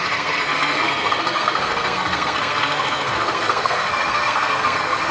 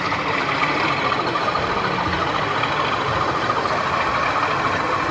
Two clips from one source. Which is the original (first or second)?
second